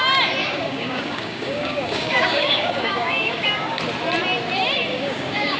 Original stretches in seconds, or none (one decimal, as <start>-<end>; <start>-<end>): 0.0-0.4; 3.8-4.9